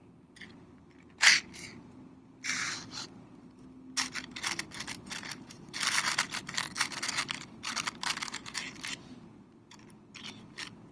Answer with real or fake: real